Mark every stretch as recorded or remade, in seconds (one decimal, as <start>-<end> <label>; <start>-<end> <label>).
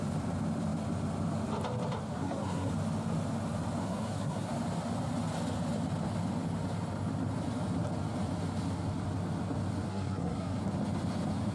0.0-2.1 recorded; 2.1-2.7 remade; 2.7-3.8 recorded; 3.8-4.5 remade; 4.5-9.9 recorded; 9.9-10.6 remade; 10.6-11.5 recorded